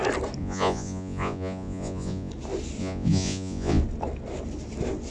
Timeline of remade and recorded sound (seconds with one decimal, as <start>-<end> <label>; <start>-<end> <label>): 0.0-0.4 recorded; 0.4-2.3 remade; 2.3-2.8 recorded; 2.8-3.8 remade; 3.8-5.1 recorded